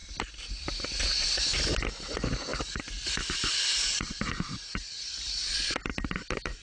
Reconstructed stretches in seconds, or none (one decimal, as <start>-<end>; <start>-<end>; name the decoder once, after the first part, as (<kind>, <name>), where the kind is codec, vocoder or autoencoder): none